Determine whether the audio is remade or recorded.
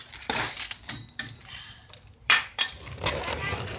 remade